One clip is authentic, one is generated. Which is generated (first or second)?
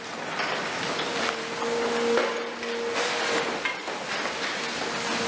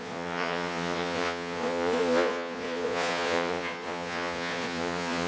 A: second